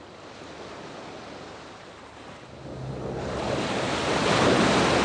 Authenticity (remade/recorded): recorded